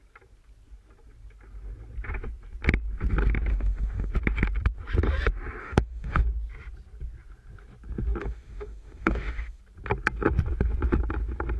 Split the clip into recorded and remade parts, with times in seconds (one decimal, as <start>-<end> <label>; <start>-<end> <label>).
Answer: 0.0-3.5 recorded; 3.5-4.1 remade; 4.1-5.6 recorded; 5.6-6.2 remade; 6.2-8.2 recorded; 8.2-9.6 remade; 9.6-11.6 recorded